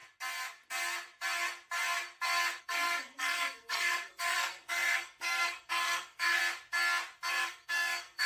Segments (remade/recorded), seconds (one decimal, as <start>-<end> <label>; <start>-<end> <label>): 0.0-2.6 recorded; 2.6-6.4 remade; 6.4-7.3 recorded; 7.3-8.3 remade